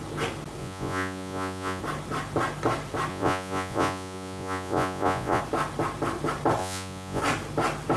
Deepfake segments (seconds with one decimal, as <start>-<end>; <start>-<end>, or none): 0.6-1.8; 3.1-5.4; 6.6-7.2